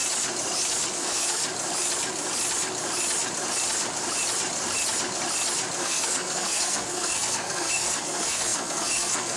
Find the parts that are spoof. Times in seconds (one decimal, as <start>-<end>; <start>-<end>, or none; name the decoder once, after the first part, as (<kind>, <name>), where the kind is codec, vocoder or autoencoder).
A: 0.9-1.4 (codec, SNAC); 5.8-9.4